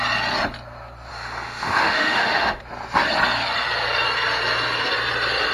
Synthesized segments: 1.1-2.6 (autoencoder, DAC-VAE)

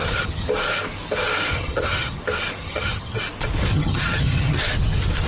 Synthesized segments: 0.0-0.5 (vocoder, HiFi-GAN); 1.5-2.2; 2.6-3.2; 3.7-4.6